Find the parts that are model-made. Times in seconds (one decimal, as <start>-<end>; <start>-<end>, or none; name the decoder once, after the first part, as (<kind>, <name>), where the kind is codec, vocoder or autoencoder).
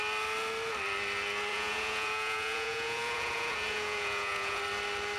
1.5-4.6 (vocoder, Vocos)